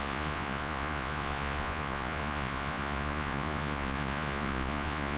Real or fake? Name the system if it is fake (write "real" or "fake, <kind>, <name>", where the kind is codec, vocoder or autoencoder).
fake, vocoder, Vocos